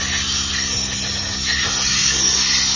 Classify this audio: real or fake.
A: real